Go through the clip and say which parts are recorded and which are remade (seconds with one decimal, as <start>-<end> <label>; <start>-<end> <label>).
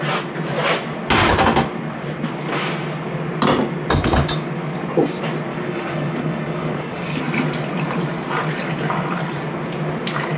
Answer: 0.0-5.5 recorded; 5.5-7.2 remade; 7.2-10.4 recorded